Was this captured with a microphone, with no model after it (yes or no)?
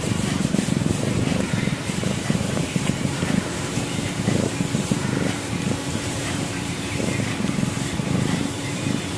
no